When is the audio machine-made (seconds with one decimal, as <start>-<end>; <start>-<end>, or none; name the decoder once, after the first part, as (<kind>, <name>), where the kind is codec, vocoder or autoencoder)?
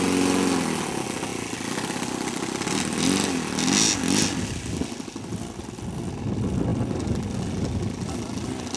none